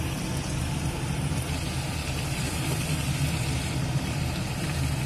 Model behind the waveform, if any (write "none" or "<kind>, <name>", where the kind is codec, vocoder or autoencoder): vocoder, BigVGAN v2